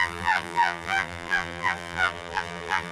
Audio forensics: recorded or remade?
remade